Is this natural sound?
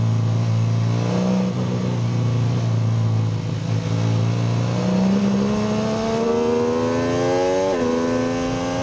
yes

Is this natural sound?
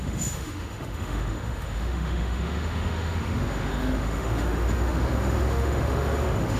no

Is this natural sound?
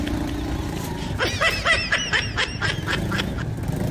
yes